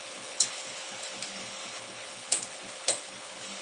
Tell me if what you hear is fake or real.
fake